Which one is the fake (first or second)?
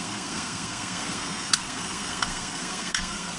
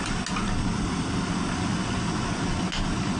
first